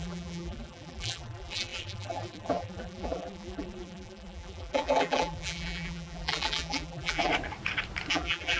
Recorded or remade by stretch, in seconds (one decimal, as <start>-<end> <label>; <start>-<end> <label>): 0.0-7.3 remade; 7.3-8.1 recorded; 8.1-8.6 remade